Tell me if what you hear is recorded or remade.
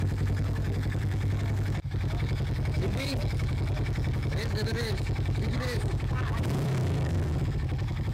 remade